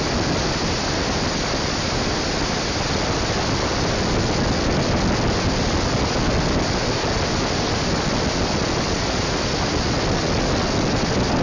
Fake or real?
real